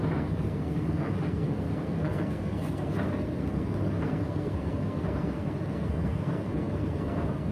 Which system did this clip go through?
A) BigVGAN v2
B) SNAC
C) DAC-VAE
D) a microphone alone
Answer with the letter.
B